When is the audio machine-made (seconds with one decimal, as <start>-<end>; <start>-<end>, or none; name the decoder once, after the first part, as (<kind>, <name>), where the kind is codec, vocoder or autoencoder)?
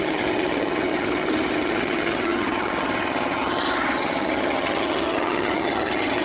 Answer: 0.0-6.2 (vocoder, HiFi-GAN)